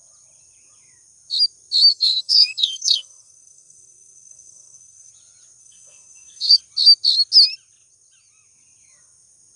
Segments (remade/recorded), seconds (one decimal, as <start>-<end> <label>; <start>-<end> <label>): 0.0-1.9 recorded; 1.9-5.1 remade; 5.1-5.6 recorded; 5.6-6.6 remade; 6.6-9.6 recorded